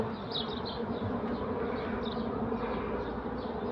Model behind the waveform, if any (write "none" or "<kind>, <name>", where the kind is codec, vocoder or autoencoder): none